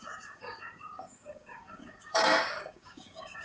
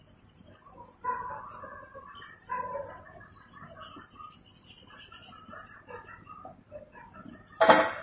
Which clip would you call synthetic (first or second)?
first